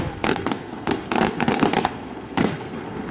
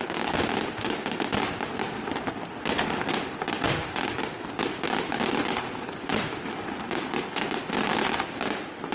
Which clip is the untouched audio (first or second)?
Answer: second